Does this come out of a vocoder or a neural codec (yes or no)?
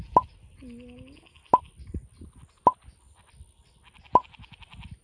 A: no